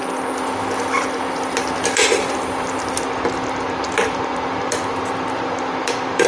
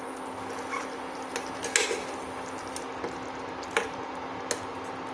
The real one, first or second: second